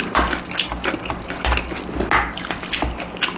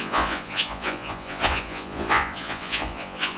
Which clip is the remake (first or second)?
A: second